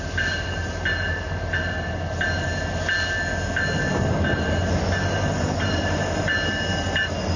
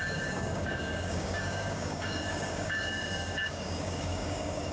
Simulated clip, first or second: second